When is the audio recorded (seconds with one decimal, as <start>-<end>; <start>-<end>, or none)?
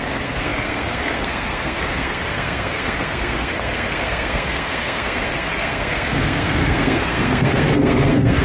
none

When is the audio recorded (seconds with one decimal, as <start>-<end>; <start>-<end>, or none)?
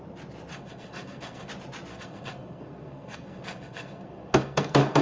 0.0-0.5; 1.5-1.9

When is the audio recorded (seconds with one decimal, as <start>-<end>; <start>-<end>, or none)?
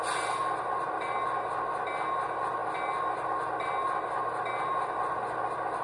0.0-5.8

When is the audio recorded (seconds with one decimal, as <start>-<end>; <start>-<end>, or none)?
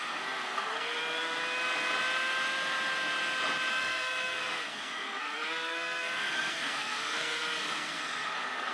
1.0-3.7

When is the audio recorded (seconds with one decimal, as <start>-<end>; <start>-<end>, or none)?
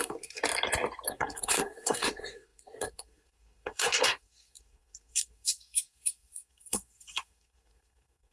0.4-1.1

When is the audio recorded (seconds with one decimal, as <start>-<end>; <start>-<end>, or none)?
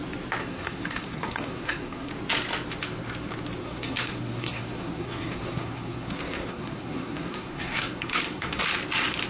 0.0-0.4; 2.1-3.6; 8.6-9.3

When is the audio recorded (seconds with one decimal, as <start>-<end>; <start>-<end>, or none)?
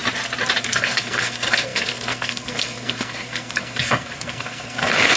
0.0-0.6